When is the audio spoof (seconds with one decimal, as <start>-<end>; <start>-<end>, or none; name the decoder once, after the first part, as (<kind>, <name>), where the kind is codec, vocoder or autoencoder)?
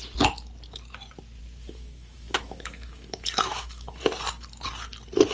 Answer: 1.4-4.0 (autoencoder, DAC-VAE)